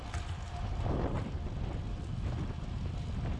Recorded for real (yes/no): yes